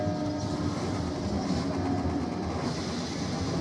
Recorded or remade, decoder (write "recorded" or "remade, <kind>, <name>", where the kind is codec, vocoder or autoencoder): recorded